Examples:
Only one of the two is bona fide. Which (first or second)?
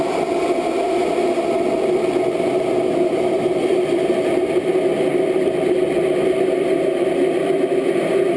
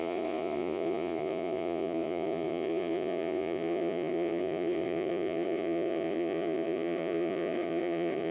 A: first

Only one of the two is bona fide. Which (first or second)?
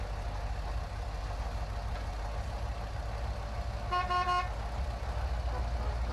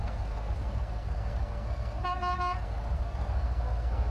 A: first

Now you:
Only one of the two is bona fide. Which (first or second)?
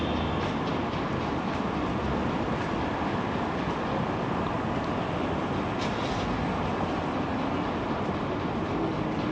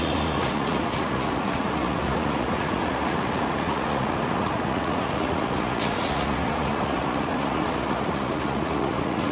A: first